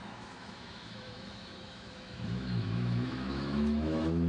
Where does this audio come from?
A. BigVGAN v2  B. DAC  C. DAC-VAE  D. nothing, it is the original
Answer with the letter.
C